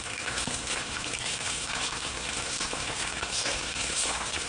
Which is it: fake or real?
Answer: fake